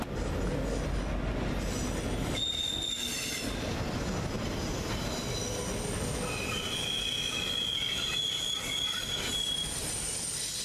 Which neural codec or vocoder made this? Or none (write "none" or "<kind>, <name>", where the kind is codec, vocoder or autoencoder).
none